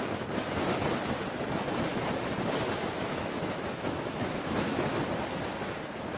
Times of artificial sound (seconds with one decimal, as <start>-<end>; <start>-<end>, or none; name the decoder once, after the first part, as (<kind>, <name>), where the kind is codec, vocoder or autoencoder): 1.9-5.0 (autoencoder, DAC-VAE)